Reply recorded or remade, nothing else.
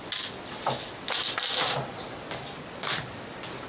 recorded